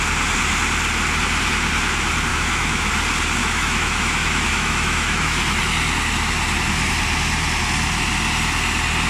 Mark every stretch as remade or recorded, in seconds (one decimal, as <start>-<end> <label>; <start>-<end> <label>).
0.0-2.3 recorded; 2.3-2.9 remade; 2.9-3.4 recorded; 3.4-5.6 remade; 5.6-9.1 recorded